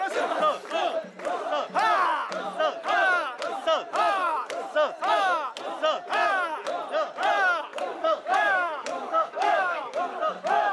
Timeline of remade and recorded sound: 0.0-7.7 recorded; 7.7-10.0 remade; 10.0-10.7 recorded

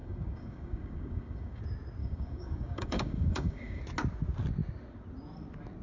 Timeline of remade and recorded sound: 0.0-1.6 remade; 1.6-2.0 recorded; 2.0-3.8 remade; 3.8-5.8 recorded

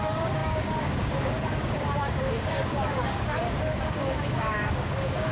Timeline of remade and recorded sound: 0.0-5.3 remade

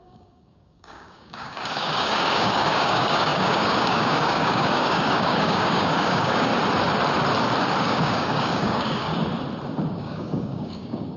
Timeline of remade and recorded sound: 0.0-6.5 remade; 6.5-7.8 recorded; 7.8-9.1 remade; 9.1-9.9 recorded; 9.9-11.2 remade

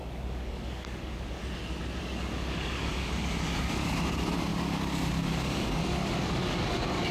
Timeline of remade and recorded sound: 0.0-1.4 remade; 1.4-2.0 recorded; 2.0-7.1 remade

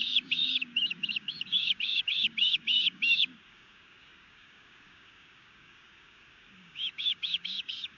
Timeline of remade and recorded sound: 0.0-8.0 remade

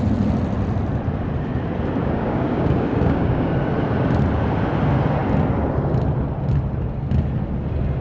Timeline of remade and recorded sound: 0.0-2.0 recorded; 2.0-3.5 remade; 3.5-8.0 recorded